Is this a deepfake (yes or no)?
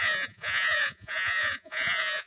yes